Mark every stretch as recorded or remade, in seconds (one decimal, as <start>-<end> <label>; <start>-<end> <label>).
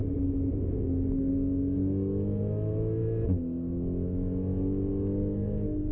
0.0-5.9 recorded